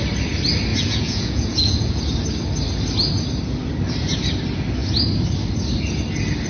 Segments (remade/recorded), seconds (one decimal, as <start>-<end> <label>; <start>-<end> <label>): 0.0-0.7 recorded; 0.7-2.0 remade; 2.0-6.5 recorded